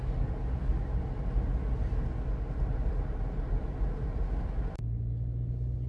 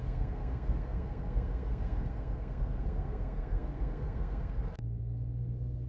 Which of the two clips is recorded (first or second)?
first